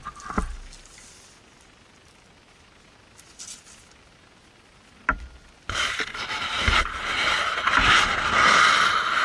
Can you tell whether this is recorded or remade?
recorded